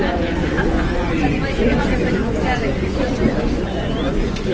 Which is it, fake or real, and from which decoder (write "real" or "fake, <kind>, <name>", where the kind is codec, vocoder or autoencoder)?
fake, vocoder, Vocos